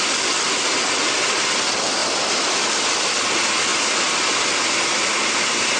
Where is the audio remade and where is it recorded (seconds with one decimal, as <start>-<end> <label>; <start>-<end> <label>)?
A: 0.0-2.0 recorded; 2.0-2.7 remade; 2.7-3.7 recorded; 3.7-5.8 remade